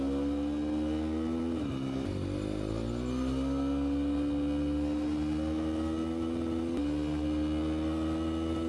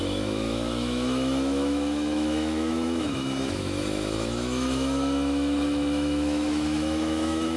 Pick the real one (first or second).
first